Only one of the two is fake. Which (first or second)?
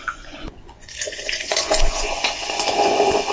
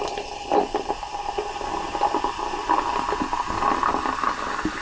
first